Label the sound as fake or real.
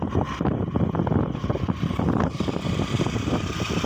real